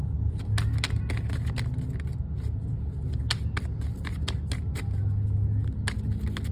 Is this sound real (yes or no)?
yes